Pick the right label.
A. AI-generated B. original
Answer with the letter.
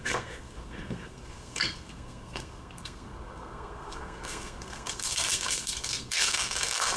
A